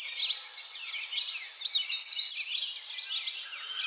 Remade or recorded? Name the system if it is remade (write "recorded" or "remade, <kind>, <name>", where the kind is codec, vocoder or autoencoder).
recorded